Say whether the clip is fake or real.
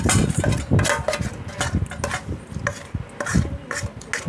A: real